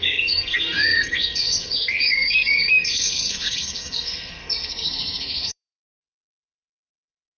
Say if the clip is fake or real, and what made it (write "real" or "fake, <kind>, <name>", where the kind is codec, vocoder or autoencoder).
fake, codec, SNAC